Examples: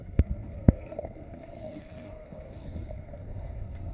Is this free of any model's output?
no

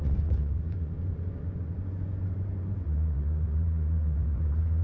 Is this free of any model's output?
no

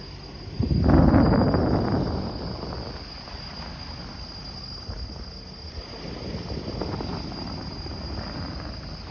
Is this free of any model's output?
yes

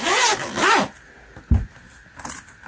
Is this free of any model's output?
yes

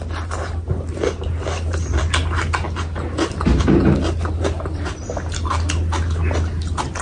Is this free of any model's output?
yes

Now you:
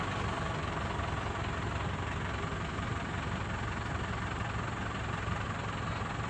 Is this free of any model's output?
yes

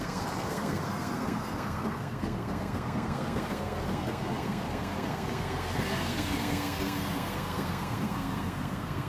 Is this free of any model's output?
no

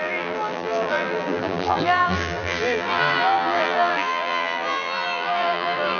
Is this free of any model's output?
no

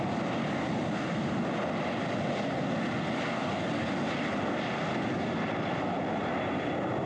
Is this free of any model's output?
yes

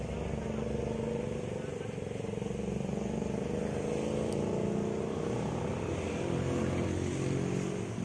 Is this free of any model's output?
yes